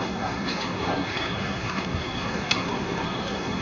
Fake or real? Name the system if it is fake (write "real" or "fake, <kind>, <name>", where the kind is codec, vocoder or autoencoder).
fake, codec, SNAC